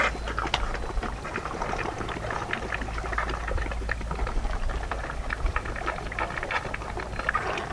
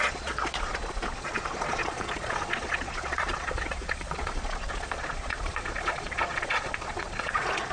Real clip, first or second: first